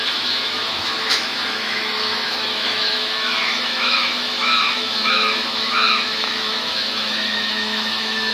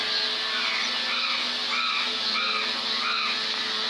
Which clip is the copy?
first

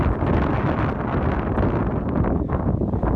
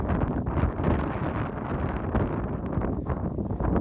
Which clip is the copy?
second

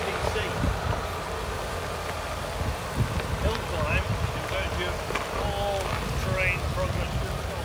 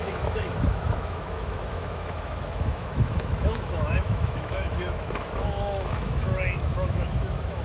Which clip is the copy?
second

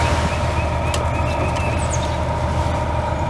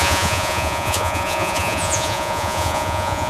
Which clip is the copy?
second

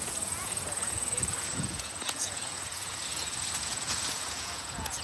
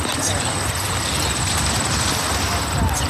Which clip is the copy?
first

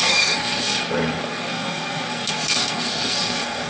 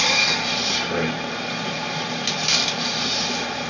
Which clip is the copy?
first